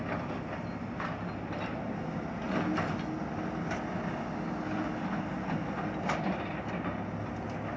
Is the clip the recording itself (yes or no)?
yes